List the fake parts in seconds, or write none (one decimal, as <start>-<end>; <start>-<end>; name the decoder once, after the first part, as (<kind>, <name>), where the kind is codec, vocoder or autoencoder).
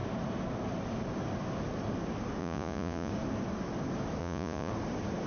2.4-3.1 (vocoder, Vocos); 4.2-4.7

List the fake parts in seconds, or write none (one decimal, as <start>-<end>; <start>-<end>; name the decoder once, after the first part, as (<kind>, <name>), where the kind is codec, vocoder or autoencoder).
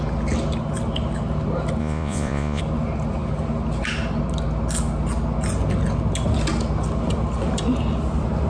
1.8-2.6 (vocoder, Vocos)